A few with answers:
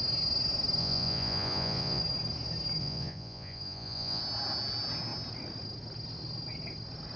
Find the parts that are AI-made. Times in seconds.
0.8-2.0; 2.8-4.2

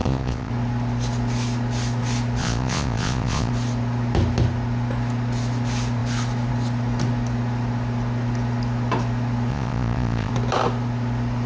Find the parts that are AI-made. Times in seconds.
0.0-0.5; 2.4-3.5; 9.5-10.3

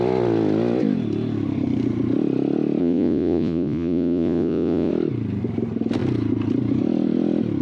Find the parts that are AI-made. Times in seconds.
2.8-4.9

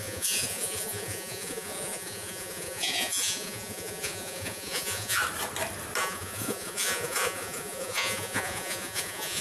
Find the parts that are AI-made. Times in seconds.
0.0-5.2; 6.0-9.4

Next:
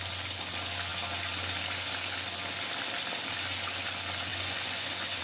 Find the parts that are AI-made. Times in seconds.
4.3-5.2